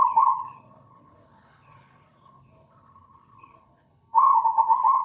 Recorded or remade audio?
remade